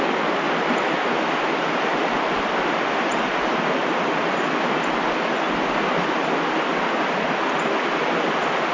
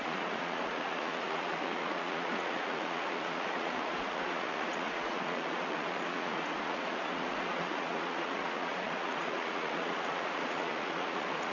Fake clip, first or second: second